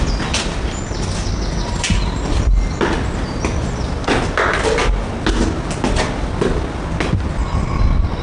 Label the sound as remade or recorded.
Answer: recorded